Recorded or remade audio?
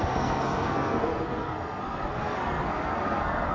remade